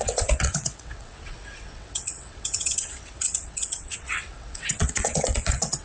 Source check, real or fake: fake